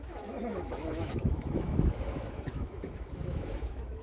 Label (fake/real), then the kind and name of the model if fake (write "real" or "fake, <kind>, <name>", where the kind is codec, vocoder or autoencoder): fake, autoencoder, DAC-VAE